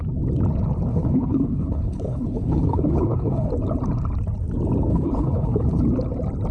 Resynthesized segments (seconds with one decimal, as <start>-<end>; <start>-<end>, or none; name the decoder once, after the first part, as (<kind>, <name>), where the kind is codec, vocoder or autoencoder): 0.9-3.5 (codec, HILCodec); 4.9-5.8